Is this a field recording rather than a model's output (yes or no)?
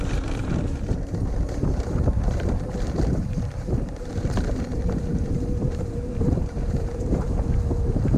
no